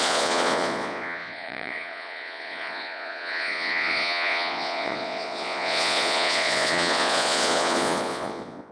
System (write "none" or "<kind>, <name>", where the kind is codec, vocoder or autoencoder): vocoder, Vocos